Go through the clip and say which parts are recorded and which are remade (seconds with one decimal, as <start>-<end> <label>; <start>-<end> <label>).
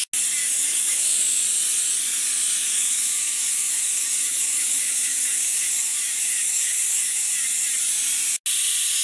0.0-0.4 recorded; 0.4-1.4 remade; 1.4-2.6 recorded; 2.6-7.3 remade; 7.3-9.0 recorded